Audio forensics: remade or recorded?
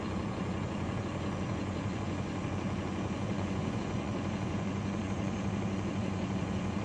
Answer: remade